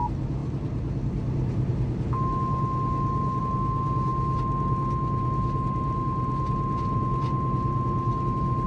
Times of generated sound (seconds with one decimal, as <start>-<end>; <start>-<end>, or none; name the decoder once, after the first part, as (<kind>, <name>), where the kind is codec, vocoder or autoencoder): none